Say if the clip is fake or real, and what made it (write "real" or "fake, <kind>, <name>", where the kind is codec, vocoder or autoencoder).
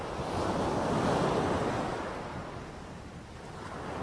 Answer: real